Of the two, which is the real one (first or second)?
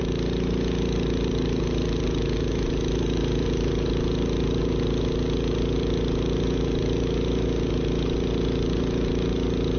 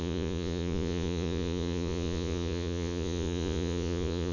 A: first